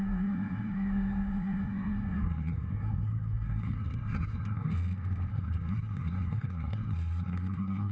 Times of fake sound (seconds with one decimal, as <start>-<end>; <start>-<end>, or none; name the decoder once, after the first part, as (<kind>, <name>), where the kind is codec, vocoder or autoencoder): 0.0-4.7 (codec, SNAC); 5.3-7.9